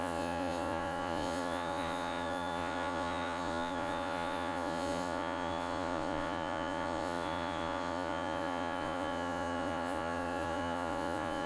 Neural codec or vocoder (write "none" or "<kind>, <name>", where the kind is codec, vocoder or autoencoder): vocoder, Vocos